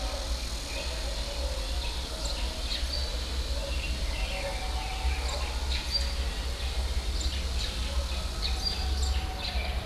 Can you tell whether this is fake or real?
real